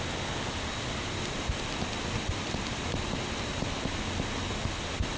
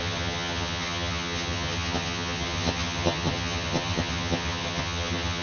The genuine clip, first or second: first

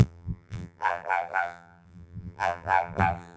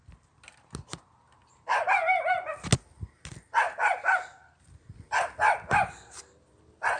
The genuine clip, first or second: second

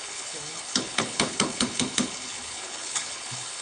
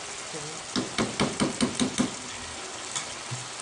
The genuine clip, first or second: second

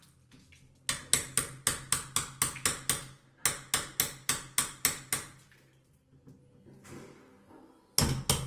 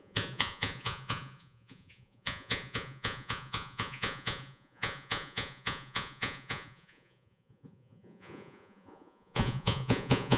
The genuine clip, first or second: first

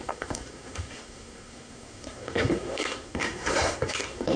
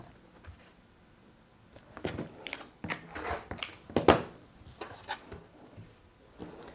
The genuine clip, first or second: second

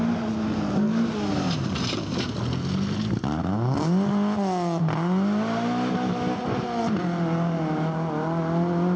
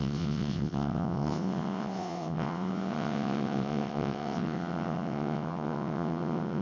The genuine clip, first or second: first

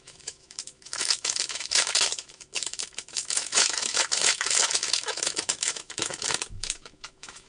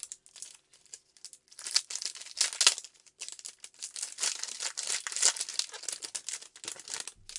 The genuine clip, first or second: second